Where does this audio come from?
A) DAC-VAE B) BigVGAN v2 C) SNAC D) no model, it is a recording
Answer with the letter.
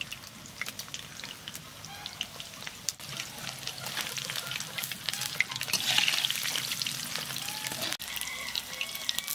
D